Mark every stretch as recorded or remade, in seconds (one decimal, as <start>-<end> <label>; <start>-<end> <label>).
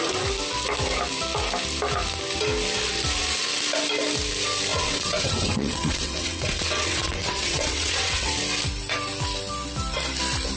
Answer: 0.0-4.7 recorded; 4.7-8.3 remade; 8.3-10.6 recorded